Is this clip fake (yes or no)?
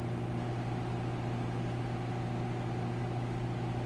no